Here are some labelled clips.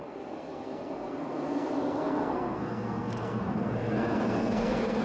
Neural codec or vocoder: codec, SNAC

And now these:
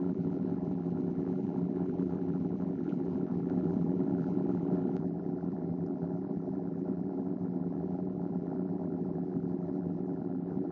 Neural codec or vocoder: vocoder, BigVGAN v2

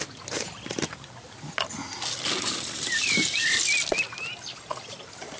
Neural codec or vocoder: none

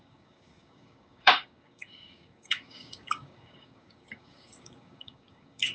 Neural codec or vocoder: codec, DAC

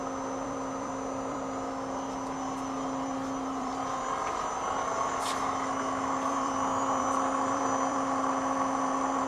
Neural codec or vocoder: vocoder, BigVGAN v2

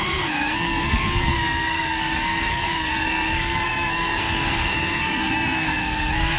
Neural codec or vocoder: codec, SNAC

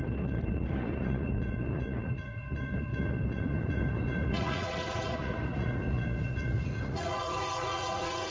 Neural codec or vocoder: vocoder, Vocos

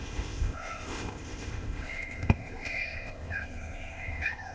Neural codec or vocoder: codec, ZipCodec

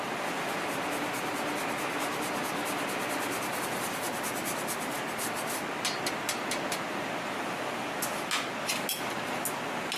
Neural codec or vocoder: none